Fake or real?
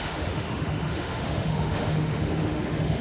fake